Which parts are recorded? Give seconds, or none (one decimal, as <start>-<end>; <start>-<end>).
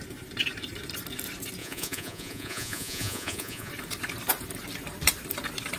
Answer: 0.0-1.6; 3.7-5.8